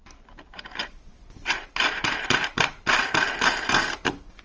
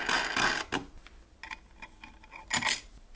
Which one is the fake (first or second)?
first